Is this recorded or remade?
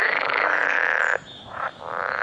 remade